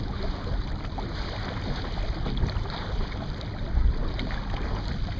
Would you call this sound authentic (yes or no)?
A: yes